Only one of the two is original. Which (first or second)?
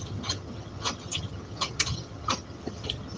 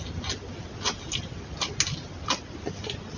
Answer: second